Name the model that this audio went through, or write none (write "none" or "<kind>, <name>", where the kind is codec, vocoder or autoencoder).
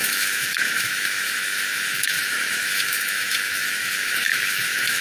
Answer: autoencoder, DAC-VAE